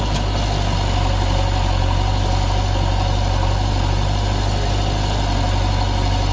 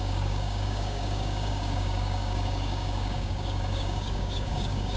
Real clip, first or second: first